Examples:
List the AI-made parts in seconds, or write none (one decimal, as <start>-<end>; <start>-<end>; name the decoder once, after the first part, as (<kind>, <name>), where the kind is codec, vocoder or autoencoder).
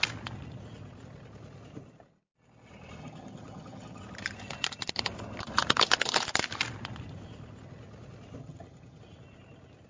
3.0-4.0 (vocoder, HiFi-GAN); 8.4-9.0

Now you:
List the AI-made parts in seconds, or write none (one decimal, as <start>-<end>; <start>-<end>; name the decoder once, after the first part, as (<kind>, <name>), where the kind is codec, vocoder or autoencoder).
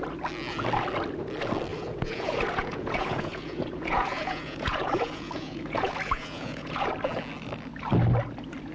1.7-6.9 (vocoder, Vocos)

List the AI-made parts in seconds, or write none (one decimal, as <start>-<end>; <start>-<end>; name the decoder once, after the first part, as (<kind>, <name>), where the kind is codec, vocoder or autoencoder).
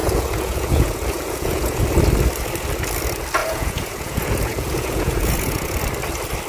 0.0-1.8 (vocoder, Vocos); 3.4-5.8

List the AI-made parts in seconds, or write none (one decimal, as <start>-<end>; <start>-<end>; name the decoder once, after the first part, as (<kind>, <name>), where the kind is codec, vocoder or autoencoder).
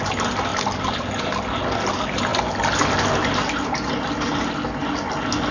none